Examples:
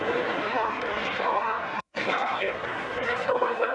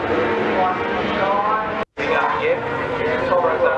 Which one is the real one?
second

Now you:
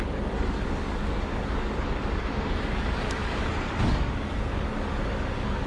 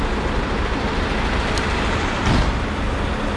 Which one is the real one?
second